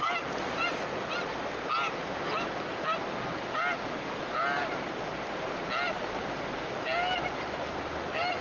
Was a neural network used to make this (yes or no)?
no